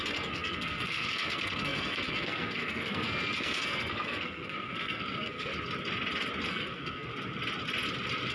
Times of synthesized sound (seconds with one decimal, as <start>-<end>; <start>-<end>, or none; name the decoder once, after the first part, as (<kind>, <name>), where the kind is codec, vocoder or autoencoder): 0.0-5.5 (codec, SNAC); 6.5-7.1